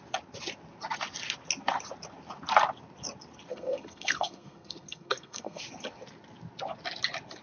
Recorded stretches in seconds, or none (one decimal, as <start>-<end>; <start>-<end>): 0.0-3.5; 5.6-7.4